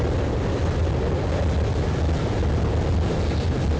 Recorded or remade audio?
recorded